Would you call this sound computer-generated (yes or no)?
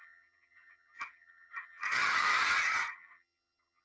yes